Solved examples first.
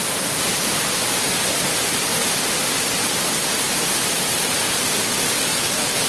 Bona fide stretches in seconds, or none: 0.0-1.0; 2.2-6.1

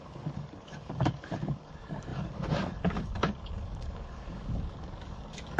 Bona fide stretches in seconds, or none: none

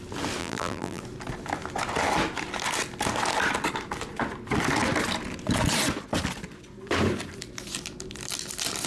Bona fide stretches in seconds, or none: 0.0-0.4; 1.0-8.9

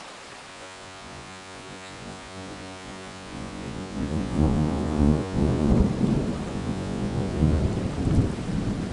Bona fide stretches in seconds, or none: 0.0-0.5; 5.7-6.5; 7.6-8.9

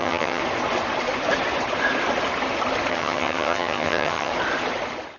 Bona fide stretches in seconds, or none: 0.4-2.9; 4.3-5.2

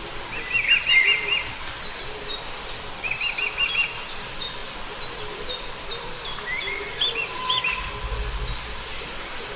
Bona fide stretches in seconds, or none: 0.0-9.6

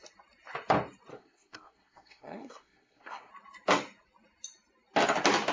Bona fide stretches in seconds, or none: 0.0-1.1; 3.3-5.5